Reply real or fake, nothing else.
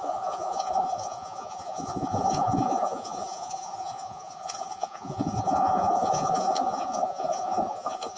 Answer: fake